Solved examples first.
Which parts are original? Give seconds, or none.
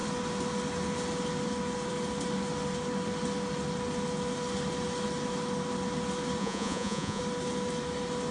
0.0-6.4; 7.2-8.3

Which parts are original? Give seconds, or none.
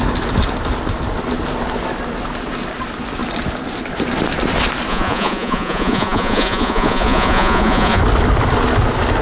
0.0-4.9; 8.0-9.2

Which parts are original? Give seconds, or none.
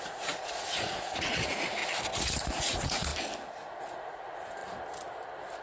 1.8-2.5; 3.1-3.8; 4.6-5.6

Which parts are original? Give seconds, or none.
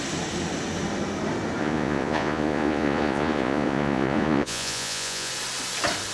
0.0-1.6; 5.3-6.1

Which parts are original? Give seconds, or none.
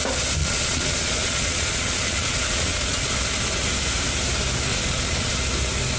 0.0-0.4; 3.0-4.7; 5.3-6.0